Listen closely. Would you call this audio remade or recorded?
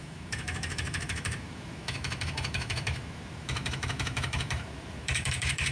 remade